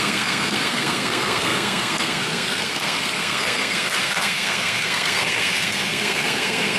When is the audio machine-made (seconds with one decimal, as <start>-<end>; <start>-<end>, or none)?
0.0-6.8